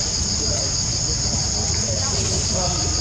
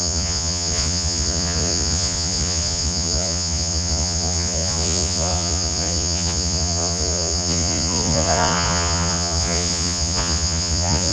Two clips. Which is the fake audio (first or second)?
second